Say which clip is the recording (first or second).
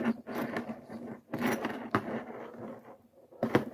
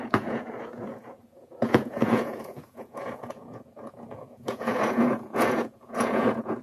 first